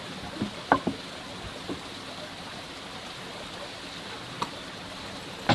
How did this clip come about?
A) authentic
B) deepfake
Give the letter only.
A